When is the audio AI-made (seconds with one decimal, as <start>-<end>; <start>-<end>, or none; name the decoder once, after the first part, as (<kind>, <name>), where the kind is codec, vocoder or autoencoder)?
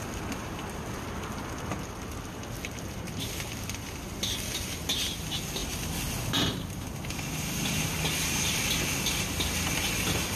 0.4-3.6 (vocoder, BigVGAN v2); 5.6-6.8